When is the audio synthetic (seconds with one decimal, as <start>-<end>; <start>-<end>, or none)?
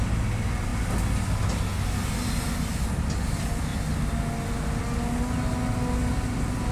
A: none